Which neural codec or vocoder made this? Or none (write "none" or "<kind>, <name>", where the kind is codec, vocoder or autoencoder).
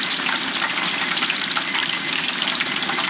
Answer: none